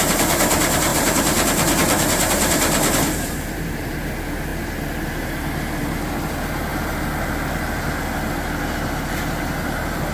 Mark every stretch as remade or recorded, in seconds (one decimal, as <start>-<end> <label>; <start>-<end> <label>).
0.0-0.9 recorded; 0.9-3.9 remade; 3.9-10.1 recorded